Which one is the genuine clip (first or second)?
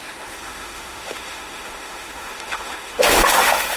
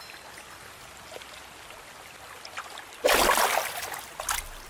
second